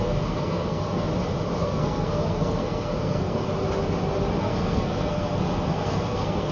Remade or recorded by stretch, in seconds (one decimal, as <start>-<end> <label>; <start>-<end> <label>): 0.0-1.1 remade; 1.1-1.6 recorded; 1.6-3.5 remade; 3.5-4.4 recorded; 4.4-6.5 remade